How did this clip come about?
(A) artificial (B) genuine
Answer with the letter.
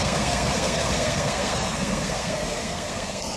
A